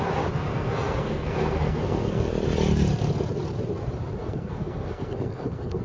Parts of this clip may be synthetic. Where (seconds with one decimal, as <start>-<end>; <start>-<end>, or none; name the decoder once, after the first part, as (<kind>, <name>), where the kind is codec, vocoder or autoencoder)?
0.5-2.3 (codec, SNAC); 4.2-5.8